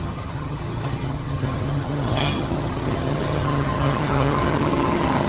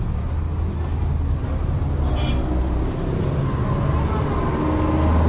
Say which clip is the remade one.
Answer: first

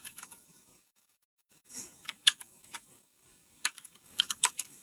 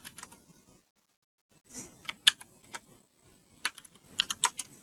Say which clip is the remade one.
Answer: first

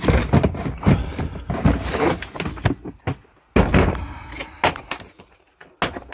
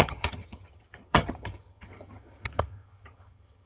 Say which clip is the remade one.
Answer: second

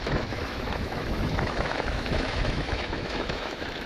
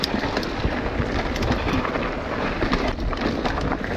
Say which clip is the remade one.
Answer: first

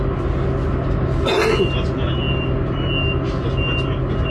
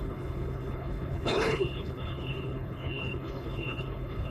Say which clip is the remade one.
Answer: second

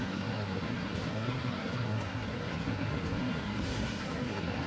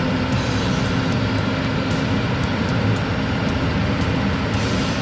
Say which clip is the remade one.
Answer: first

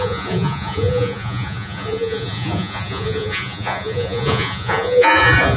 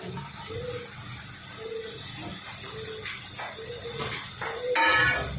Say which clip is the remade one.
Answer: first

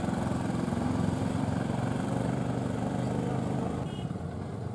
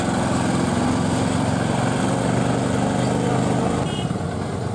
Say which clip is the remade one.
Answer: first